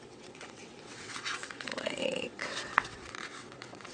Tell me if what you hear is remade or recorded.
remade